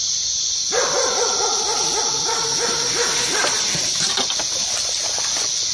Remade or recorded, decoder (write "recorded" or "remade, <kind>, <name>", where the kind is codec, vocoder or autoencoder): recorded